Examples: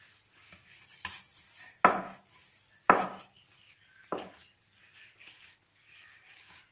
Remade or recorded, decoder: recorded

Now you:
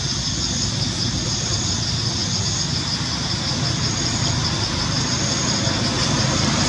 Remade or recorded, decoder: recorded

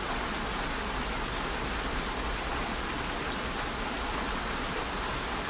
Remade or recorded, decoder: recorded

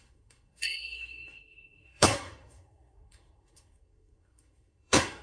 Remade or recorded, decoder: remade, codec, SNAC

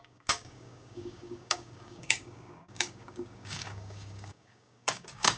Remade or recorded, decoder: remade, codec, DAC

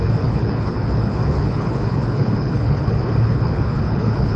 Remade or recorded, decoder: remade, codec, HILCodec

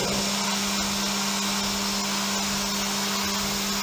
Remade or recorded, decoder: recorded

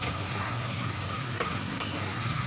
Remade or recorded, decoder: remade, codec, SNAC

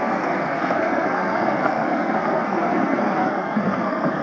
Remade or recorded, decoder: remade, codec, SNAC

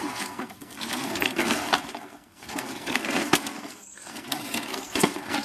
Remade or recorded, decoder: remade, codec, SNAC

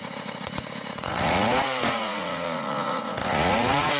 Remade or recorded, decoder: remade, vocoder, Vocos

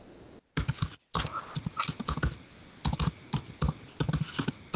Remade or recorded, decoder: recorded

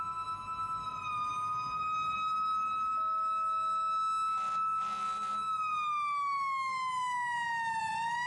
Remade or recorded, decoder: recorded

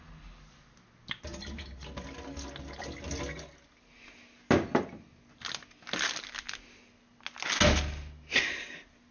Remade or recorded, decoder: recorded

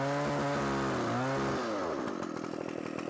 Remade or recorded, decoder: recorded